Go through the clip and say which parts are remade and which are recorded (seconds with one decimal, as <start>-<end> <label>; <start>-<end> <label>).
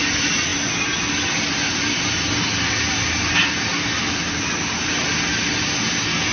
0.0-6.3 recorded